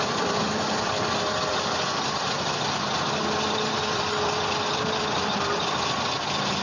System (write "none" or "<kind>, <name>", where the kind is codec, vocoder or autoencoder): vocoder, BigVGAN v2